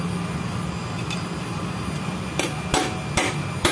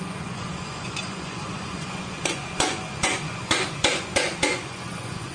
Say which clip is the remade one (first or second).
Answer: second